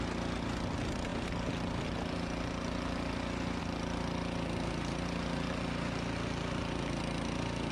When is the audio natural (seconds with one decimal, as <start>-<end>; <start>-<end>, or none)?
0.0-7.7